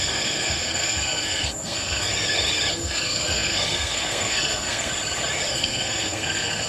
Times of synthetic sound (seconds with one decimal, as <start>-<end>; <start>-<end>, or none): 0.0-2.1; 2.7-4.9; 5.5-6.7